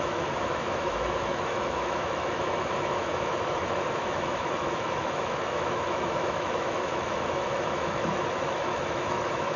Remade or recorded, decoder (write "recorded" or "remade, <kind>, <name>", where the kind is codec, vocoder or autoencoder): remade, autoencoder, DAC-VAE